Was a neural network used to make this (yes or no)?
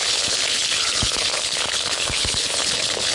yes